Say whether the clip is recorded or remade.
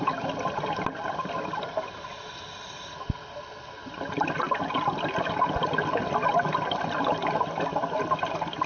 recorded